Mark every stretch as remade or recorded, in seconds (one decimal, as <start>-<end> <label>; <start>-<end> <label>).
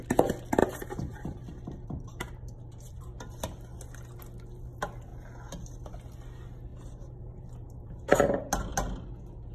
0.0-0.6 recorded; 0.6-3.0 remade; 3.0-6.7 recorded; 6.7-8.2 remade; 8.2-9.5 recorded